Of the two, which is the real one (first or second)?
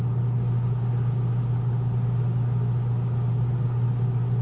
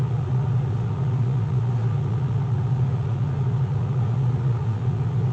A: first